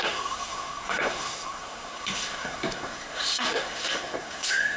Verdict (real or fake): fake